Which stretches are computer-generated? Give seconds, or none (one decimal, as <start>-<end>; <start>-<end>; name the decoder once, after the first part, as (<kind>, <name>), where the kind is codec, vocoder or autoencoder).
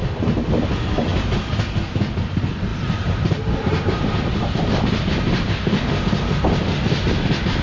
2.7-4.6 (vocoder, BigVGAN v2)